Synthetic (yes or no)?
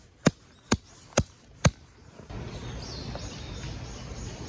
no